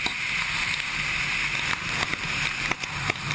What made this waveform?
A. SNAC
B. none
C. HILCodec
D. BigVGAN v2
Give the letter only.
B